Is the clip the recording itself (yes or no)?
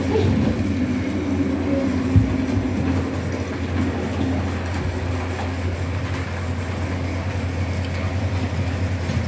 yes